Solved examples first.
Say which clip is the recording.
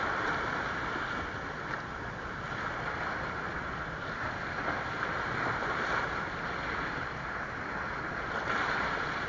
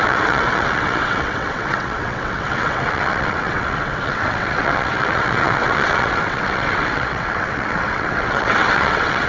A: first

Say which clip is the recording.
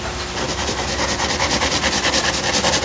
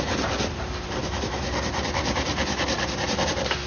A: first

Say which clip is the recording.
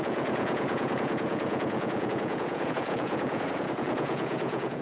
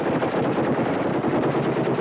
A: second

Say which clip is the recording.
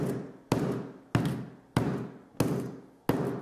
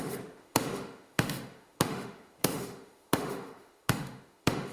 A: first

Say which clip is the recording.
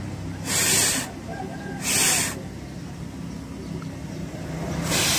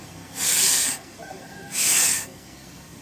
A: first